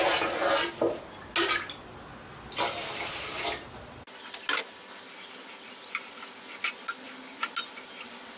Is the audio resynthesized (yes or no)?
no